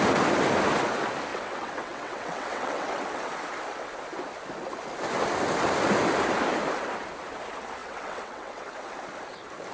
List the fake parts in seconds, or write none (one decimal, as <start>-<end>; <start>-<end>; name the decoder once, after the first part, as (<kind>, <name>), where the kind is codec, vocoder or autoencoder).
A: 1.3-3.3 (vocoder, WaveNeXt); 7.8-8.7